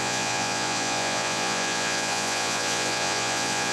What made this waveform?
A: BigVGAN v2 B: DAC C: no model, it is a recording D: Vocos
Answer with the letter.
D